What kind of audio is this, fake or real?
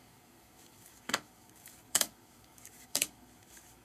fake